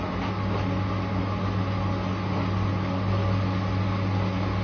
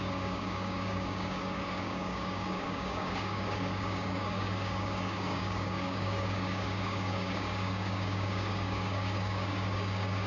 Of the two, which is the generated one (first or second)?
second